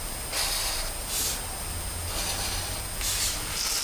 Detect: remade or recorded recorded